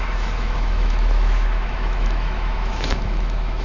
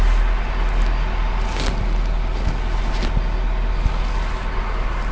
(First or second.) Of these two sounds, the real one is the second